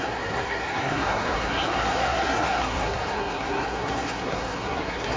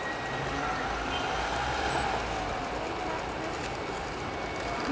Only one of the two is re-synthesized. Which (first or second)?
first